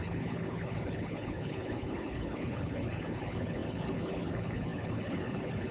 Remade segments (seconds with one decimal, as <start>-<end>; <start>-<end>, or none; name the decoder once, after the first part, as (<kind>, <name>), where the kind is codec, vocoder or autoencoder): 0.0-5.7 (codec, HILCodec)